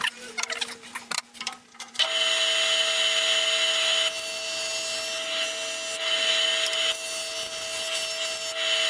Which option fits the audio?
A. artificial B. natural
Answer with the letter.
B